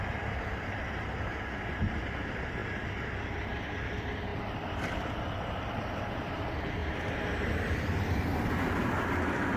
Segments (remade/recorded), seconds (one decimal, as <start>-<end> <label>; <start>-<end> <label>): 0.0-4.3 recorded; 4.3-5.8 remade; 5.8-9.6 recorded